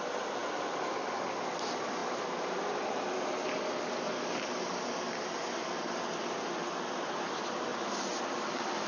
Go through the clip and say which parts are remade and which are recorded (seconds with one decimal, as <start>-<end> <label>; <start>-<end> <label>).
0.0-8.9 recorded